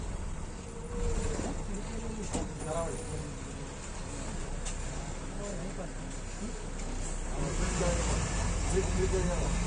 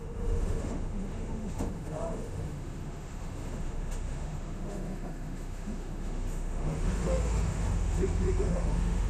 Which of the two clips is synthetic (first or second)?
second